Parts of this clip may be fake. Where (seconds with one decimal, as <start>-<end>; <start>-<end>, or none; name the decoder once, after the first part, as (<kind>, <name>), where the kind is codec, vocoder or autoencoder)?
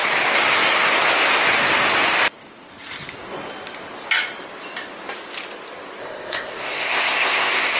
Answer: 6.0-7.8 (codec, ZipCodec)